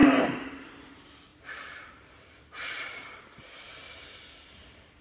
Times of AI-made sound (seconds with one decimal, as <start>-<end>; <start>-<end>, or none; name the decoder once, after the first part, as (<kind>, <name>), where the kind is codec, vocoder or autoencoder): 0.0-0.5 (vocoder, BigVGAN v2); 1.3-3.2